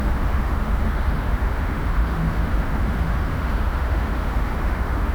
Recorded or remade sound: remade